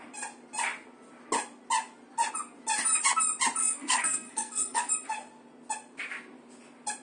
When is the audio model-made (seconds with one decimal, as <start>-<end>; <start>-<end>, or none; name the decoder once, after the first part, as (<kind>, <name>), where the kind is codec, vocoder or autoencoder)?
3.6-4.9 (codec, SNAC)